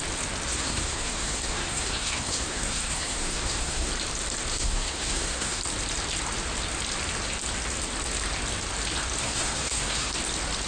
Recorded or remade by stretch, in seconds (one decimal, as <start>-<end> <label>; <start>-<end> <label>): 0.0-0.5 recorded; 0.5-3.9 remade; 3.9-4.5 recorded; 4.5-5.6 remade; 5.6-9.2 recorded; 9.2-10.1 remade; 10.1-10.7 recorded